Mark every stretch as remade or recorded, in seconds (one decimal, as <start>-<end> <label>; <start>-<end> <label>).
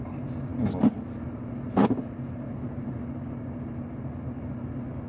0.0-5.1 recorded